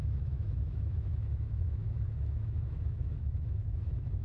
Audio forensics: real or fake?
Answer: fake